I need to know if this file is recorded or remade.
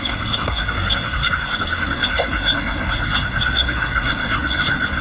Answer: remade